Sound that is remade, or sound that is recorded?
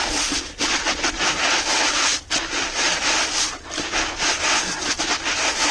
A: recorded